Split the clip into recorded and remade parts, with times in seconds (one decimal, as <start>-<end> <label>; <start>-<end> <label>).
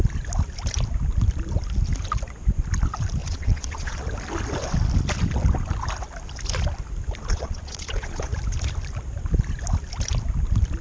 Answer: 0.0-3.2 recorded; 3.2-4.0 remade; 4.0-7.3 recorded; 7.3-8.3 remade; 8.3-10.8 recorded